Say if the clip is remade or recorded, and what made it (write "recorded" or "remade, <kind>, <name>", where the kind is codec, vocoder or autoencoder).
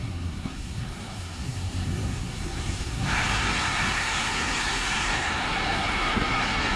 remade, codec, SNAC